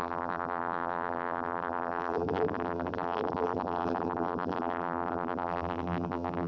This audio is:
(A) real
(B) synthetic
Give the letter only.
B